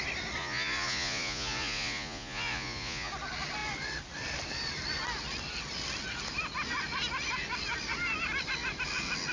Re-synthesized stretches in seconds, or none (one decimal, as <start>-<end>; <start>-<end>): 0.4-3.1